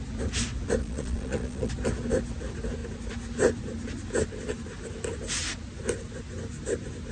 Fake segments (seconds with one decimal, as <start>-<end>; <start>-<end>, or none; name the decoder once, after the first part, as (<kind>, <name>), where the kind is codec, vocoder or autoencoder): 0.8-1.7 (vocoder, Vocos)